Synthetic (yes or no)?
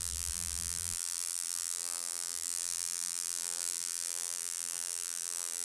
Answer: yes